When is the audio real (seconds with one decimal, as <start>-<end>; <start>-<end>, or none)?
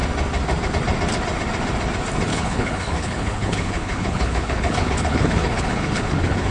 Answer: 0.0-2.3